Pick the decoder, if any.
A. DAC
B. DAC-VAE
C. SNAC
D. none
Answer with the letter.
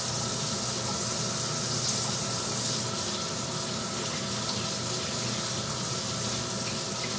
D